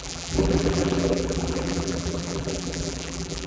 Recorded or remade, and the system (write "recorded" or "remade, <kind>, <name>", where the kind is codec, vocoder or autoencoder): remade, vocoder, BigVGAN v2